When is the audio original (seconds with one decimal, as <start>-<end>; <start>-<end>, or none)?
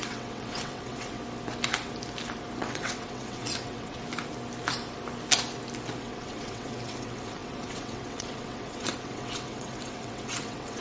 1.2-2.6; 4.0-6.0